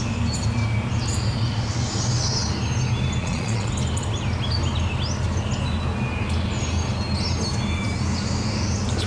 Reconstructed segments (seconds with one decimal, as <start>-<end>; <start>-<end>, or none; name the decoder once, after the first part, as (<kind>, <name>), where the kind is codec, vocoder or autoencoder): 3.2-3.7 (vocoder, Vocos)